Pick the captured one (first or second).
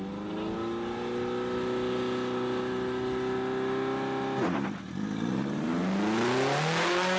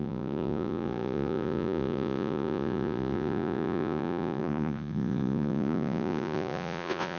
first